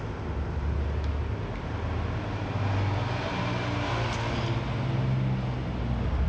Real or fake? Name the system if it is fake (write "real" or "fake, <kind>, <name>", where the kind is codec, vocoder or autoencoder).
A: real